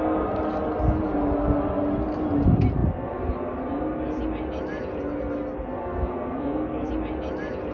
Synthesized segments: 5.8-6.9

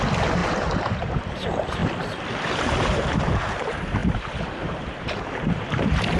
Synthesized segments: 0.0-1.8; 2.5-6.2